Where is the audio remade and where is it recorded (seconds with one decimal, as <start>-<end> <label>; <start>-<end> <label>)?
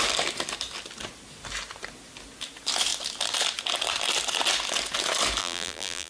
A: 0.0-5.4 recorded; 5.4-6.1 remade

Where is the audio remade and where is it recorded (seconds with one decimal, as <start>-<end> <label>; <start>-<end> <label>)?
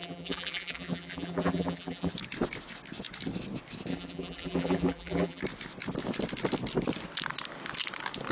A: 0.0-2.1 remade; 2.1-3.9 recorded; 3.9-5.4 remade; 5.4-8.3 recorded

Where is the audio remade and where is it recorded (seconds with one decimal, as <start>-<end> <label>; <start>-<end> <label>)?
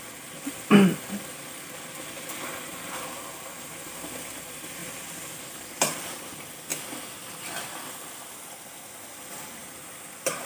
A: 0.0-4.8 recorded; 4.8-6.1 remade; 6.1-9.6 recorded; 9.6-10.5 remade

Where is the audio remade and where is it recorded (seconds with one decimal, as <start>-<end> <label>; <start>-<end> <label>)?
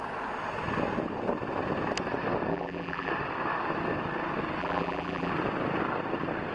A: 0.0-2.5 recorded; 2.5-3.1 remade; 3.1-4.6 recorded; 4.6-5.3 remade; 5.3-6.5 recorded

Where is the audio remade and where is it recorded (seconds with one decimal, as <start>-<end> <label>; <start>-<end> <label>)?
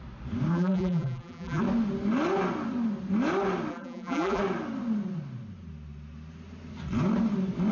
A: 0.0-0.5 recorded; 0.5-1.6 remade; 1.6-3.7 recorded; 3.7-4.4 remade; 4.4-7.7 recorded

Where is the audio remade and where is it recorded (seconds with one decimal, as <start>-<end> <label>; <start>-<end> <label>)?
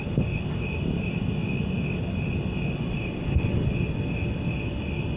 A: 0.0-5.2 recorded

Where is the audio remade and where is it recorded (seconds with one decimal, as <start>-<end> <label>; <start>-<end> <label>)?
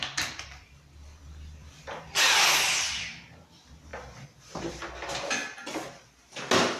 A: 0.0-1.2 remade; 1.2-1.6 recorded; 1.6-2.2 remade; 2.2-6.8 recorded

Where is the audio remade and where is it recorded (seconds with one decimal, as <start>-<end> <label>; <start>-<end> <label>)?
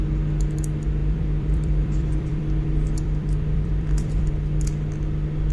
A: 0.0-1.0 recorded; 1.0-4.3 remade; 4.3-5.5 recorded